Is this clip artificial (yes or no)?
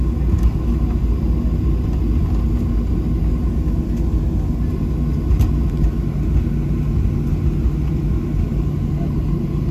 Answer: no